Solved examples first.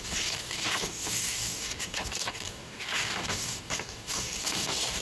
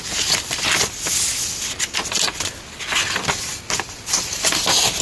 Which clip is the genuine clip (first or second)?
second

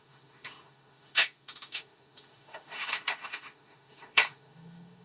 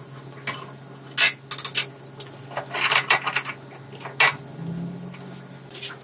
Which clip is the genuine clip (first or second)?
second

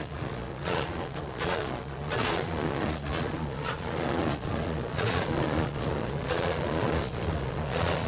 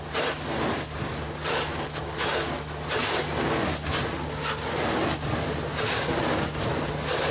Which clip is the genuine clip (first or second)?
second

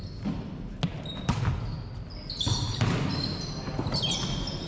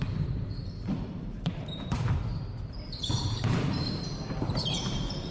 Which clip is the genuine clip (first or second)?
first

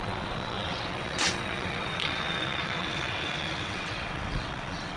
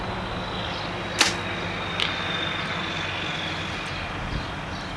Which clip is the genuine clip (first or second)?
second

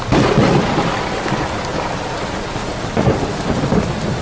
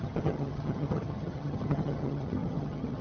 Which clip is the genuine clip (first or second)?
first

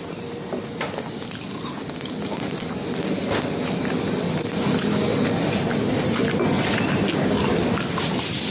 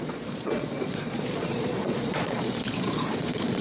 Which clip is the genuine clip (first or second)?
first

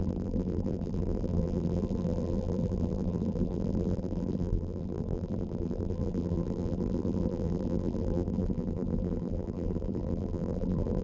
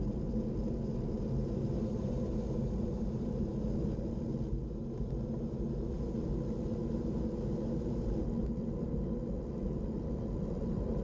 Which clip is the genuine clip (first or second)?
second